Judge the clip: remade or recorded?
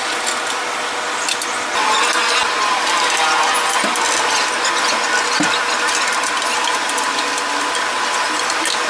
recorded